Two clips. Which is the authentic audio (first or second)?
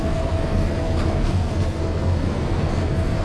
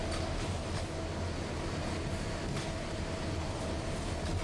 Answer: second